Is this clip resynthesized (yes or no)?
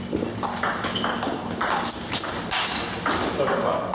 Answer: no